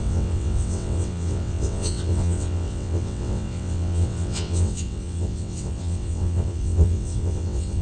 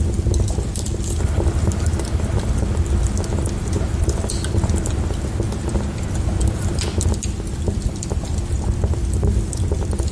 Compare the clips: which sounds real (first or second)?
second